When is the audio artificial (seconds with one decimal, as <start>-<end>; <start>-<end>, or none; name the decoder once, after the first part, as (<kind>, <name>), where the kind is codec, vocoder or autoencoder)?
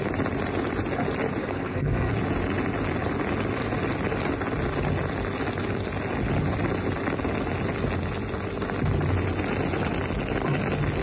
1.4-2.1 (codec, SNAC)